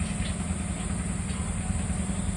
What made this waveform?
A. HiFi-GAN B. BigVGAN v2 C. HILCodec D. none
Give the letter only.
D